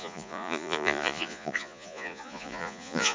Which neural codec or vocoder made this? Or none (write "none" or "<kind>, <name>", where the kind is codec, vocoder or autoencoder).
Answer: vocoder, Vocos